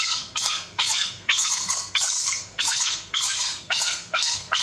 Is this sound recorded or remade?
remade